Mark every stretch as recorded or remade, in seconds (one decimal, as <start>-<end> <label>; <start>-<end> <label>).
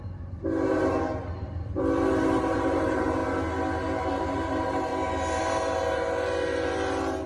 0.0-3.2 remade; 3.2-4.1 recorded; 4.1-4.9 remade; 4.9-5.4 recorded; 5.4-7.3 remade